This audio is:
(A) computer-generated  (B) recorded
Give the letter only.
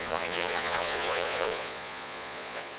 A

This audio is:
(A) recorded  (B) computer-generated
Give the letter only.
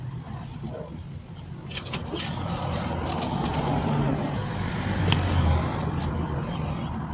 A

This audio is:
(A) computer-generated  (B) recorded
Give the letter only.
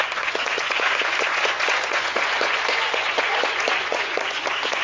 A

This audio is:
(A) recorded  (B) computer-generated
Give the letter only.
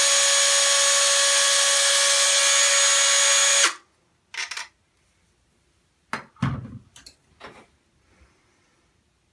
A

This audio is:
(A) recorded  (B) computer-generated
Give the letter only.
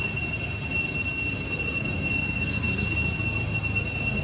A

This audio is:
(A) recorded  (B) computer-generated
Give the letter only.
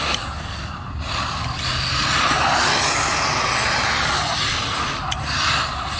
A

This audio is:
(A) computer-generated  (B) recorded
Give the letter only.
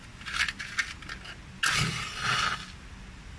B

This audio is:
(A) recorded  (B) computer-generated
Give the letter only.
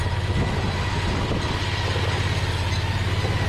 A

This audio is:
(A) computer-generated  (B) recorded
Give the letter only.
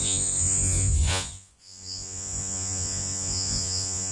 A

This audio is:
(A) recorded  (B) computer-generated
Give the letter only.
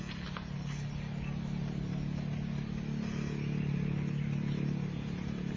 A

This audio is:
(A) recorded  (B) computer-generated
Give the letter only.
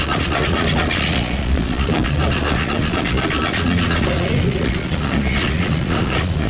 B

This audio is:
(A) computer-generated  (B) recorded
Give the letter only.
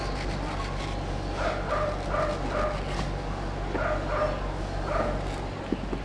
B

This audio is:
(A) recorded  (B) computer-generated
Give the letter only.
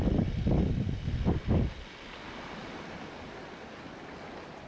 A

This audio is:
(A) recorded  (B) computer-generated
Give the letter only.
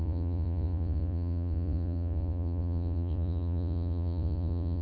B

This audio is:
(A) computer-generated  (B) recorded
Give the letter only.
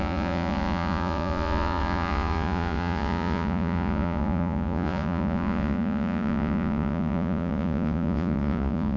A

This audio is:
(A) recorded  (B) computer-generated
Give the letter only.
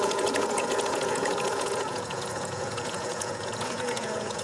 B